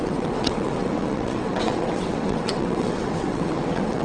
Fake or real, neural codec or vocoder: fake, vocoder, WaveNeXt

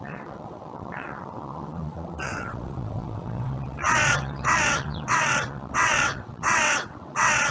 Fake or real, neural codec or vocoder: fake, vocoder, WaveNeXt